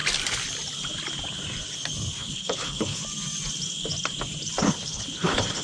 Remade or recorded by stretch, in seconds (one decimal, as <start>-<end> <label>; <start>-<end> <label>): 0.0-2.2 recorded; 2.2-3.0 remade; 3.0-4.6 recorded; 4.6-5.6 remade